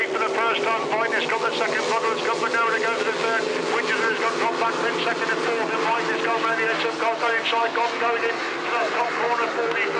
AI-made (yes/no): no